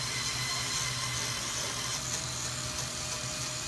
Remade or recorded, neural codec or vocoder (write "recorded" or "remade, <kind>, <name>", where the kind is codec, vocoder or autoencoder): recorded